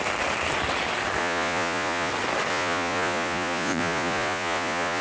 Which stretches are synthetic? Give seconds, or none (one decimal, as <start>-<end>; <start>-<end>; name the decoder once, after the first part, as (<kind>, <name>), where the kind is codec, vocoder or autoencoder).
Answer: 1.2-2.1 (vocoder, Vocos); 2.5-5.0